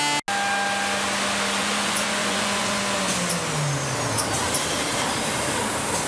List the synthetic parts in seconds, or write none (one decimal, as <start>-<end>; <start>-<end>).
1.6-2.8